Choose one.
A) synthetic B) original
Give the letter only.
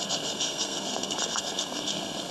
A